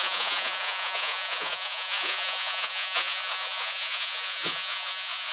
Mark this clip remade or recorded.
remade